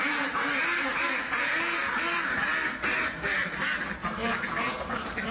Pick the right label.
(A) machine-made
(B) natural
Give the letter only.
B